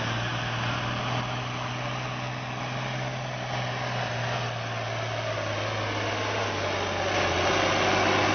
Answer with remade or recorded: recorded